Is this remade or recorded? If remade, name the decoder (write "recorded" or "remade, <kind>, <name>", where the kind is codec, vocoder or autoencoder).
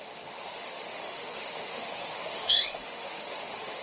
remade, autoencoder, DAC-VAE